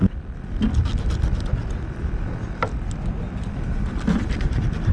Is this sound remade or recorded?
remade